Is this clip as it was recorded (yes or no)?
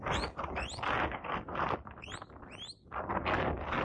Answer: yes